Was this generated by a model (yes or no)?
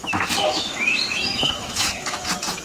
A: yes